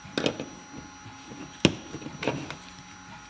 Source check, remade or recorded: recorded